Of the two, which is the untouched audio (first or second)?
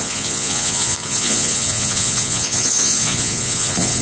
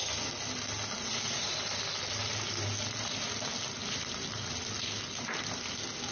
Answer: second